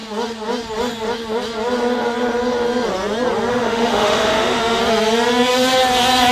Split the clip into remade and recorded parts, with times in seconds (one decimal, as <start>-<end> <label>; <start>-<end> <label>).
0.0-3.5 recorded; 3.5-4.8 remade; 4.8-6.3 recorded